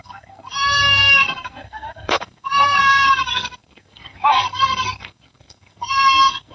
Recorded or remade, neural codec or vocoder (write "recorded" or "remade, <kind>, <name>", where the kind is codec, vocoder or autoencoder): remade, codec, SNAC